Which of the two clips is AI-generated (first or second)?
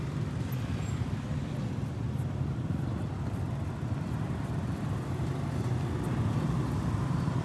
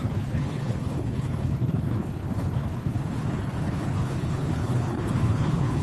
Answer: second